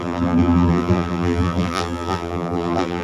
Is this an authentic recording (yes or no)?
no